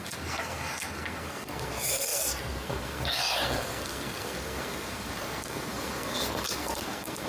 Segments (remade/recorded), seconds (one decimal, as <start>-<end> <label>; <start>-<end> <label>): 0.0-7.3 remade